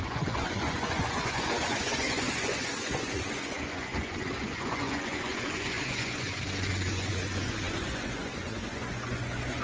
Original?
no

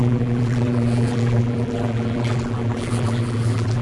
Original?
no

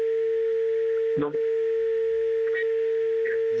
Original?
yes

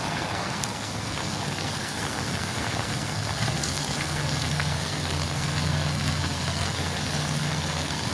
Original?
no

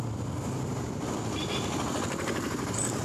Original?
yes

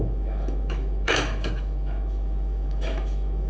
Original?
no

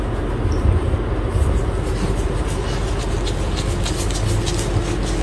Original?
yes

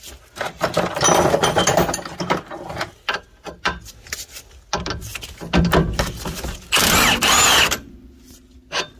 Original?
yes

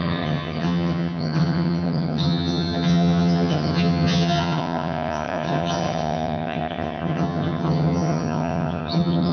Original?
no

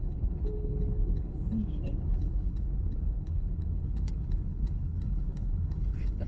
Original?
no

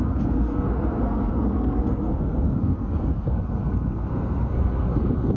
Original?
no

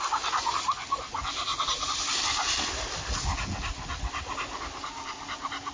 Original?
yes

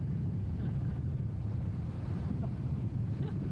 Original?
no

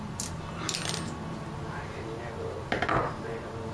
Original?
yes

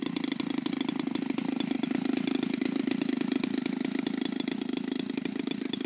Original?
yes